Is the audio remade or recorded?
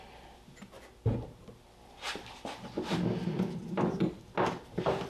recorded